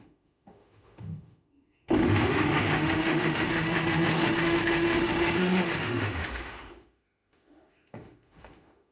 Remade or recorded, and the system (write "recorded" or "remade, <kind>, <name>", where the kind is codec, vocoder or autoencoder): remade, autoencoder, DAC-VAE